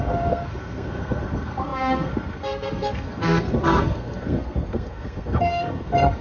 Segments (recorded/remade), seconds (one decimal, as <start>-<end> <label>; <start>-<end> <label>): 0.0-6.2 remade